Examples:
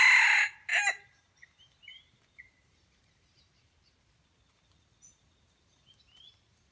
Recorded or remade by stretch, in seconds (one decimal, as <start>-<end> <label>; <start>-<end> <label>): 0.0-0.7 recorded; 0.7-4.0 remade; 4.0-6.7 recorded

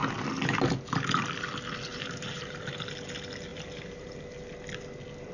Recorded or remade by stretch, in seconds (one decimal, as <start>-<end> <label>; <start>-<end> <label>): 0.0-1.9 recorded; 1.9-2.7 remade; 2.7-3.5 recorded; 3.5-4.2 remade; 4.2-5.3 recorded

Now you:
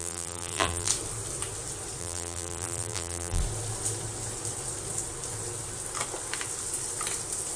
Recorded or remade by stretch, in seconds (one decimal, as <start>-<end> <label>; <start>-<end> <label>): 0.0-0.9 remade; 0.9-2.0 recorded; 2.0-3.4 remade; 3.4-7.6 recorded

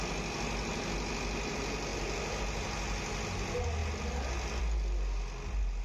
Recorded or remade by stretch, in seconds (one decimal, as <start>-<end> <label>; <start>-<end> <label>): 0.0-5.8 recorded

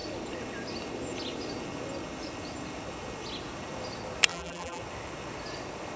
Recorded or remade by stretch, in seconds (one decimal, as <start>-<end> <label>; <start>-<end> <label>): 0.0-4.3 recorded; 4.3-4.8 remade; 4.8-6.0 recorded